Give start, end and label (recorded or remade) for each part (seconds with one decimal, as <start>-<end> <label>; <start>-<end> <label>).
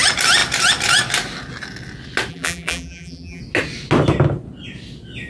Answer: 0.0-2.3 recorded; 2.3-3.4 remade; 3.4-5.3 recorded